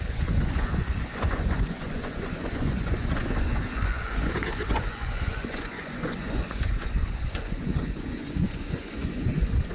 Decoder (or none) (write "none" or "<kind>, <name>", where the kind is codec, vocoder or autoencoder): vocoder, Vocos